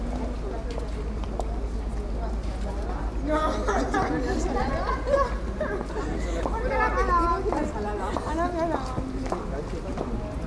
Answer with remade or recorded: recorded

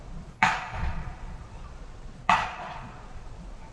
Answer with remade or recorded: remade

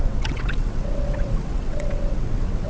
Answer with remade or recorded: remade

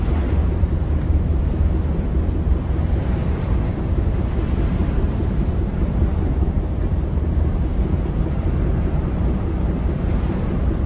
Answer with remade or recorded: remade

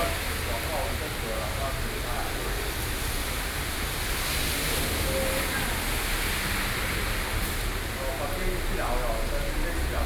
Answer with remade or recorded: recorded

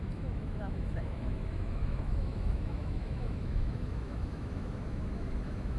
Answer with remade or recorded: remade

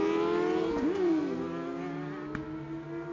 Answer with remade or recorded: recorded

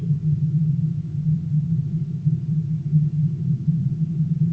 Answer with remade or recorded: recorded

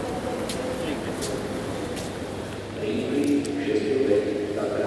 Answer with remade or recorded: recorded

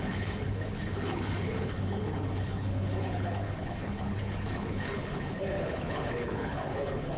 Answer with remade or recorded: remade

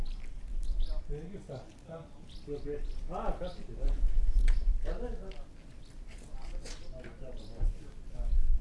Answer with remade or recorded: recorded